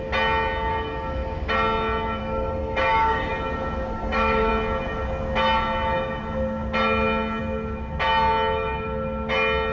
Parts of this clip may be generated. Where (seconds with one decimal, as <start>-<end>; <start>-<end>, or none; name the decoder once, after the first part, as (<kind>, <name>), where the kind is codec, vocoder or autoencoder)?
2.2-3.3 (codec, DAC); 3.9-4.5